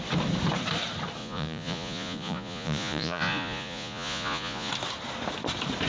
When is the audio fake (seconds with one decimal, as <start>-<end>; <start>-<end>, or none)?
1.2-4.7